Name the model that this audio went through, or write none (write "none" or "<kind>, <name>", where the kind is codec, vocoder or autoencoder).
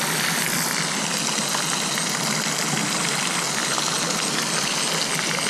none